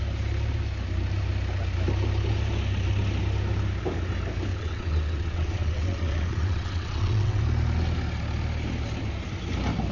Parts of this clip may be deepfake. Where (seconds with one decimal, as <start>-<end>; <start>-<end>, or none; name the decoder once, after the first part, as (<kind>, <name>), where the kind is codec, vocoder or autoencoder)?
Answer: 4.5-7.4 (vocoder, WaveNeXt)